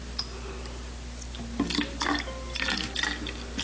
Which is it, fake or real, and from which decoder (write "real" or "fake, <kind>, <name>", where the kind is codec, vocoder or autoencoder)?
real